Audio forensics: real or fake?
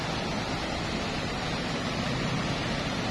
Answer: real